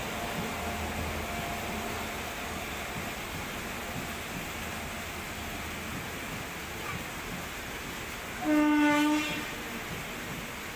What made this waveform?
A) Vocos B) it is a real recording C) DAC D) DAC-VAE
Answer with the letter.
B